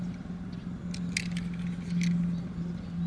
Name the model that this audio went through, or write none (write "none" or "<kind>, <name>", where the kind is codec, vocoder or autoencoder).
none